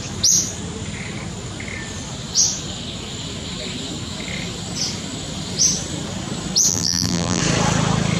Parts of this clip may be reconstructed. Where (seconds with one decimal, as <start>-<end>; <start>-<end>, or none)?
6.7-7.4